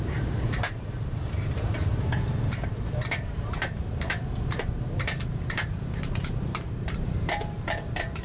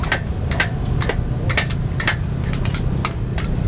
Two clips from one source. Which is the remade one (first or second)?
first